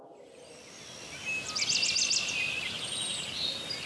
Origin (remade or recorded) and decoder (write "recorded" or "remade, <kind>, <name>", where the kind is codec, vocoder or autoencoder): recorded